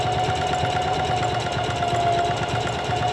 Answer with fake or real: real